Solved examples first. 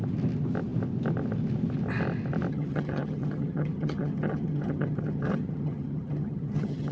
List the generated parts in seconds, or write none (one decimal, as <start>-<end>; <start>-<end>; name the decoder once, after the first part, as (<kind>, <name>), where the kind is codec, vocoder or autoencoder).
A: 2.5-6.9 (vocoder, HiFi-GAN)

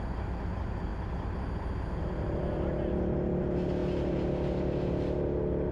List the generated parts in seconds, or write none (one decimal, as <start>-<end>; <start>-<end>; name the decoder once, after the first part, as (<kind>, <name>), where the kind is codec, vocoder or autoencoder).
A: none

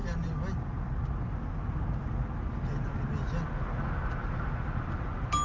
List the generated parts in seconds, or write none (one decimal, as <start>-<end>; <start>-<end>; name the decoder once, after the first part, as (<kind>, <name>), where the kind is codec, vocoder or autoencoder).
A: none

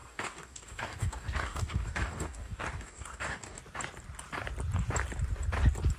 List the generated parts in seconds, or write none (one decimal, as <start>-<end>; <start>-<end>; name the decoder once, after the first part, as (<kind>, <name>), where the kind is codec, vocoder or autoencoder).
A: 0.0-3.6 (codec, DAC)

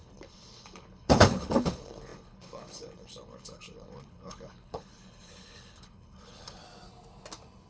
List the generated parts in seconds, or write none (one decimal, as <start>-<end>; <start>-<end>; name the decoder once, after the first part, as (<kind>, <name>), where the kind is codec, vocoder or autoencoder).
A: 0.0-6.6 (codec, HILCodec)

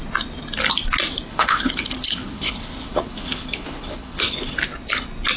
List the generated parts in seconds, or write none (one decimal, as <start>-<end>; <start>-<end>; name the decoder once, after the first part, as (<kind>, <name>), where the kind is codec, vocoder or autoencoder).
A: 1.3-4.5 (codec, HILCodec)

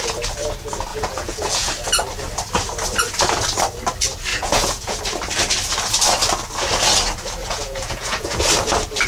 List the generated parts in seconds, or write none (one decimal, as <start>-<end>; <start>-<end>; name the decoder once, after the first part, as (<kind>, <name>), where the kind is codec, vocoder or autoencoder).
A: 0.9-1.7 (vocoder, Vocos); 4.3-5.0; 7.4-8.4

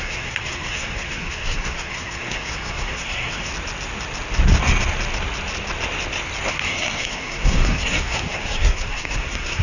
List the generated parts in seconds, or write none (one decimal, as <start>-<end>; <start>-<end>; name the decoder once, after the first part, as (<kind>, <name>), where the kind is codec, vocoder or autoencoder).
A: 0.0-3.5 (codec, SNAC); 6.5-9.6